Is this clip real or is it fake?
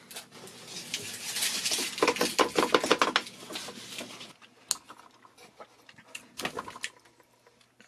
real